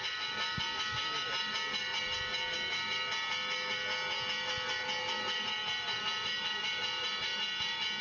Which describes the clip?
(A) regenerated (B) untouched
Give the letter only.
B